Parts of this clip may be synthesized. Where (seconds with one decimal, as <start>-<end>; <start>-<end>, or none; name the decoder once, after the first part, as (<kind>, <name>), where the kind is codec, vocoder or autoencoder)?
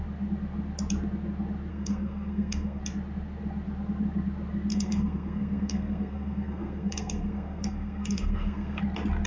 1.7-2.8 (codec, SNAC); 4.7-8.8